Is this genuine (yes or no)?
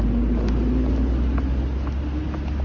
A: yes